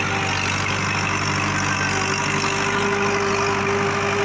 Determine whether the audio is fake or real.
real